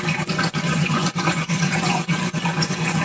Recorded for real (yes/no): no